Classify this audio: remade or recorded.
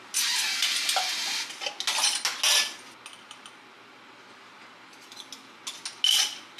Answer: recorded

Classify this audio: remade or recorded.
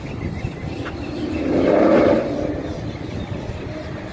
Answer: recorded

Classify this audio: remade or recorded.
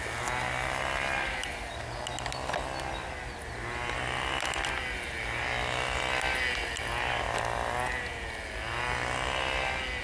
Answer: recorded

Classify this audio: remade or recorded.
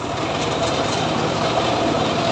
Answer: remade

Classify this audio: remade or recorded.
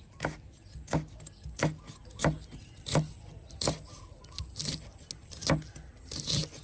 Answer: recorded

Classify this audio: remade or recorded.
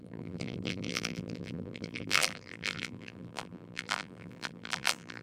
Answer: remade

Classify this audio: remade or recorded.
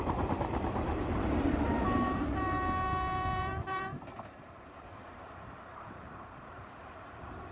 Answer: remade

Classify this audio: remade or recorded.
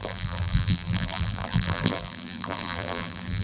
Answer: remade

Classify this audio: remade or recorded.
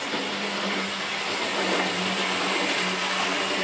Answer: recorded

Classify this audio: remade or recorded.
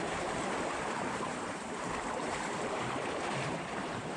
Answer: remade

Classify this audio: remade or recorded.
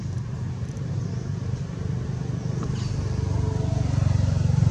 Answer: recorded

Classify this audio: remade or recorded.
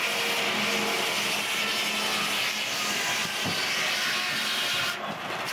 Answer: recorded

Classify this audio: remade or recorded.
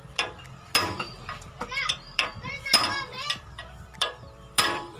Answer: remade